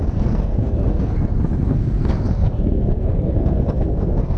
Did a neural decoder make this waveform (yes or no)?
yes